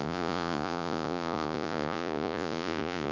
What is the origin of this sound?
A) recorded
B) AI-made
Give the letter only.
B